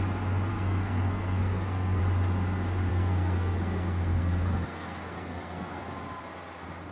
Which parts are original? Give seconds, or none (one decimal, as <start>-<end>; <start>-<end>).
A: 0.0-0.5; 2.0-2.9; 5.8-6.9